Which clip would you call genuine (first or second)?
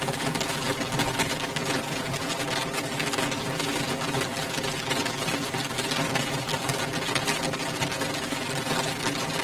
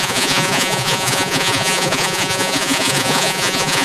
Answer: first